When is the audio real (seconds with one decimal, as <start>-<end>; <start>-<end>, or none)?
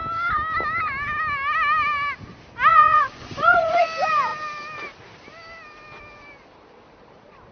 0.0-2.7; 3.8-7.5